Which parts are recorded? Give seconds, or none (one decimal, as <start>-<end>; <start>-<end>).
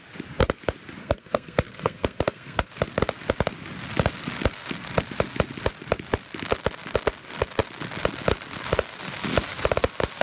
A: 0.0-1.0; 2.7-10.2